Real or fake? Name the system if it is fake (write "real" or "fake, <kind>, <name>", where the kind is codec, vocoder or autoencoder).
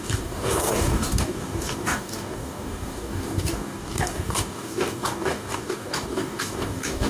fake, codec, DAC